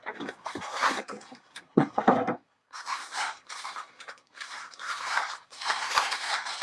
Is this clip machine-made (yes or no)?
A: yes